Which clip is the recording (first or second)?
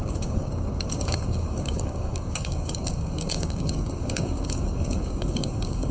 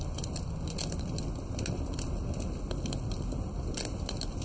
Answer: second